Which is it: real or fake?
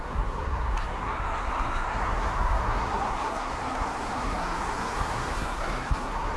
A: fake